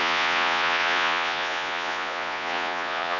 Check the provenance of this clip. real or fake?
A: fake